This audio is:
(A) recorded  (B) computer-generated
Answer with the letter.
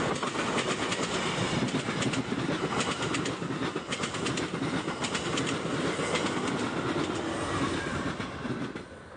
A